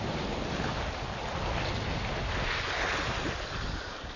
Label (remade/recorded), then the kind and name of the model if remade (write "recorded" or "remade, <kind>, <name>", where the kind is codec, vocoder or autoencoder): recorded